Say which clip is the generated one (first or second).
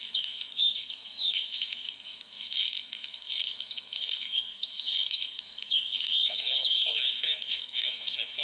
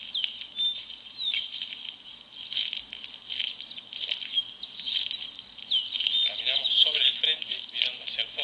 first